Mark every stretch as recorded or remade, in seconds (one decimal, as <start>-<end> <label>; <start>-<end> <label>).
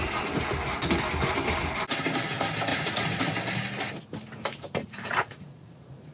0.0-2.7 recorded; 2.7-3.2 remade; 3.2-4.8 recorded; 4.8-6.1 remade